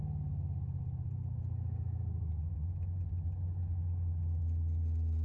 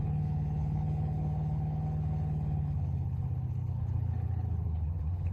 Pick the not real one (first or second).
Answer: second